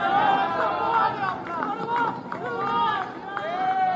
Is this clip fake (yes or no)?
no